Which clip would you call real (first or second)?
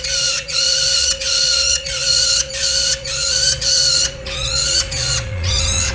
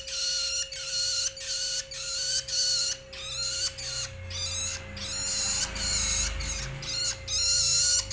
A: second